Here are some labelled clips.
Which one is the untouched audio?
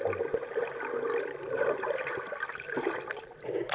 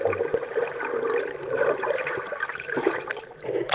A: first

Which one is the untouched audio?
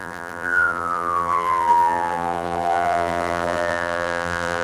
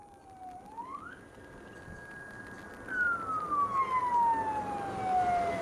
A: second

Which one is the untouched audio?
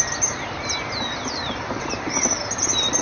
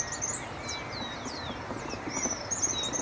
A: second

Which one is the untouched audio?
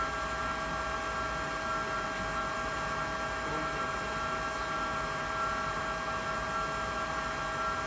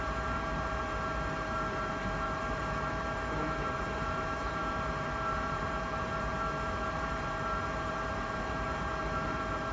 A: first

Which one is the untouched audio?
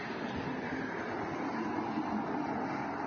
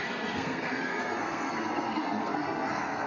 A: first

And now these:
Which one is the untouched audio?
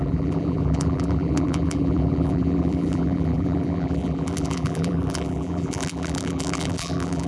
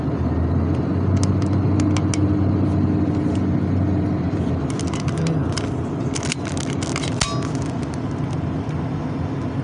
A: second